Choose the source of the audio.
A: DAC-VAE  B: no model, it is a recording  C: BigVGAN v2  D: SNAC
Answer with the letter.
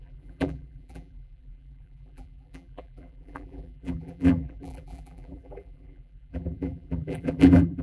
C